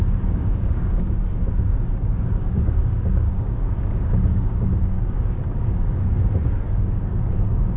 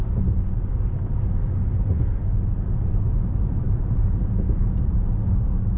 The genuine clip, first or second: second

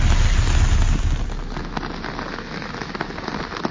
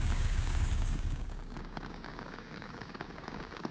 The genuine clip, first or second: first